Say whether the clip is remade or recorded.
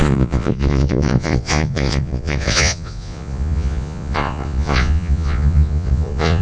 remade